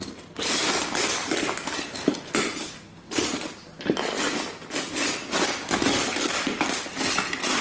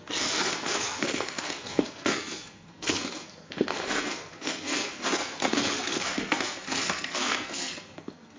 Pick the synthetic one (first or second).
second